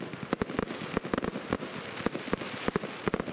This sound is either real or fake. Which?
real